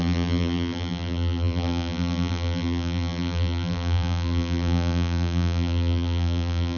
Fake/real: fake